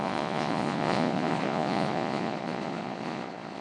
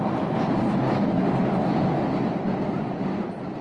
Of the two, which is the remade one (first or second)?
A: first